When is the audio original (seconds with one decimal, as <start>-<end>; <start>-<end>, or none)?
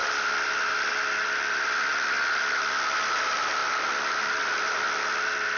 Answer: 0.0-0.9